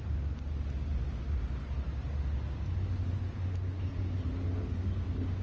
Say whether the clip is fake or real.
real